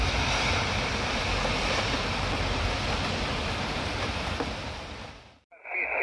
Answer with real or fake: fake